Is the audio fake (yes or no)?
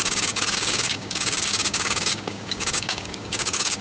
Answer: yes